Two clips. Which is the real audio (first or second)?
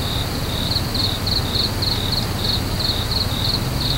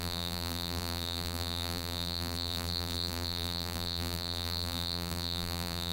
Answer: first